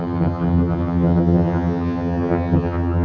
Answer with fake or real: fake